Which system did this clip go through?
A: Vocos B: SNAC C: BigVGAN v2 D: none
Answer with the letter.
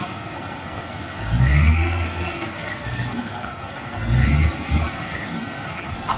B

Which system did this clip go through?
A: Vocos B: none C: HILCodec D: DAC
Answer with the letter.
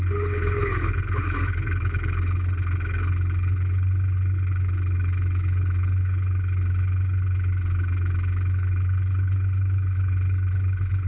C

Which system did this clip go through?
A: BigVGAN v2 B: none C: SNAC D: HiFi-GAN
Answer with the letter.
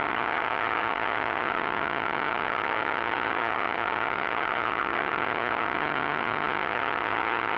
D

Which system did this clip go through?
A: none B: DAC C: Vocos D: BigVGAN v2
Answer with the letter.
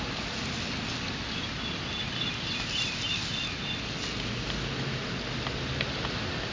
A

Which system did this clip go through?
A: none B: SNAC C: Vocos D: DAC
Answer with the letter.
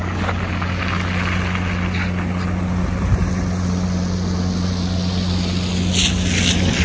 A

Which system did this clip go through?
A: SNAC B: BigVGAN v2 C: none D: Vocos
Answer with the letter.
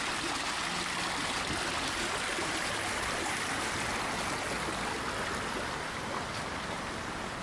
C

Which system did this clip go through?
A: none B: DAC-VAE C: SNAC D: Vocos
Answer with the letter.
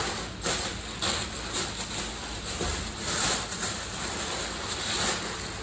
A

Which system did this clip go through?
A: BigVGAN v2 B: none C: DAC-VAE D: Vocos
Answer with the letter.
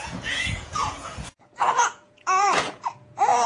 D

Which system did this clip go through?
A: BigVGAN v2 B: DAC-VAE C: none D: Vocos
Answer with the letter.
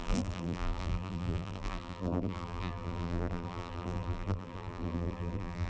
A